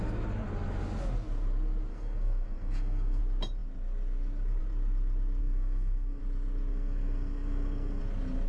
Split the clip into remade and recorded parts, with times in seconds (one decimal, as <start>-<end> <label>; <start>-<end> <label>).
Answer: 0.0-1.9 recorded; 1.9-3.2 remade; 3.2-5.4 recorded; 5.4-6.2 remade; 6.2-6.7 recorded; 6.7-8.0 remade; 8.0-8.5 recorded